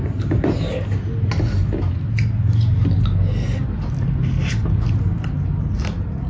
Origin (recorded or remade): recorded